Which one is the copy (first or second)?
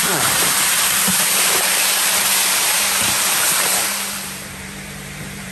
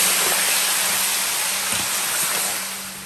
first